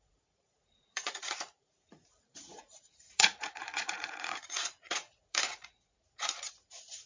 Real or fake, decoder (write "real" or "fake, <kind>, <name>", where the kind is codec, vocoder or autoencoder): fake, vocoder, Vocos